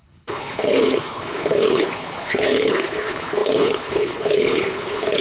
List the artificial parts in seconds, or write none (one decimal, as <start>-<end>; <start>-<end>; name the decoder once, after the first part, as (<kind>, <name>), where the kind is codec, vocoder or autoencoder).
0.0-5.2 (codec, HILCodec)

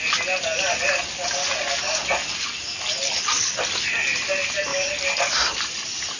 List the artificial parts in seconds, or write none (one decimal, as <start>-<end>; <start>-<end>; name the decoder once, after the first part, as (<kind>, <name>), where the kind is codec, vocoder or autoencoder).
none

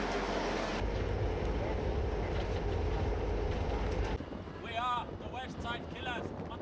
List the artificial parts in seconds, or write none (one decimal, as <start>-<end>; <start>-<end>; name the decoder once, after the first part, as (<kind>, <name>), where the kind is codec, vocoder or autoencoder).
none

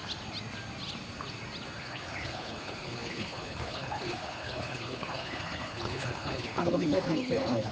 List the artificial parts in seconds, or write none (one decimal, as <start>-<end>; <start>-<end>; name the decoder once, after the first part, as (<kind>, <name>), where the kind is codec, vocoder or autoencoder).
1.8-7.7 (codec, HILCodec)